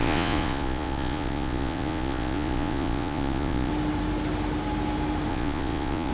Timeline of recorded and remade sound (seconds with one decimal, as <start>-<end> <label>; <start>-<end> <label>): 0.0-3.7 remade; 3.7-5.3 recorded; 5.3-6.1 remade